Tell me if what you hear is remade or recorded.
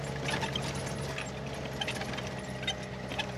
recorded